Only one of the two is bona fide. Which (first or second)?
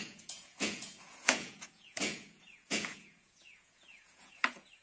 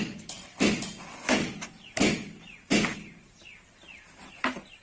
second